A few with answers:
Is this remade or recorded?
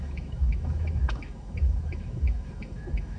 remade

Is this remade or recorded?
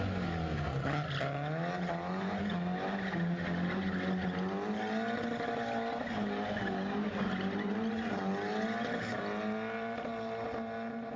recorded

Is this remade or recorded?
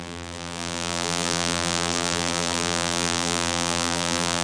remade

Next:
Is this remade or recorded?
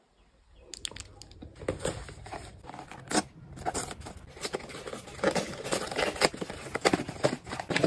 recorded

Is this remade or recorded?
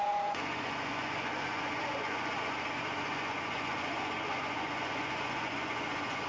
remade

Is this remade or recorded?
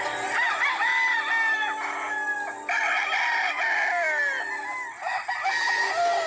recorded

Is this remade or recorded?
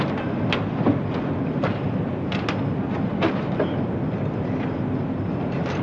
recorded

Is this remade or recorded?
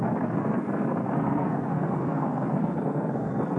remade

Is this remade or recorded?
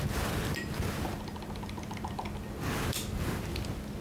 recorded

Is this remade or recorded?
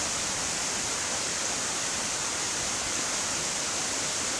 remade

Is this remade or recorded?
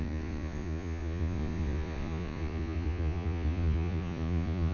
remade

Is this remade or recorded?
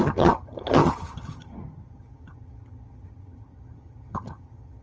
remade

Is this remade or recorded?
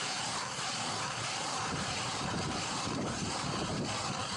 remade